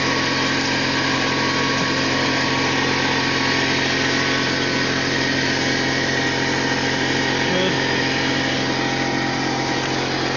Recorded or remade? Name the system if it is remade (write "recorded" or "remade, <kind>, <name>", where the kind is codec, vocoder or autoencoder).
recorded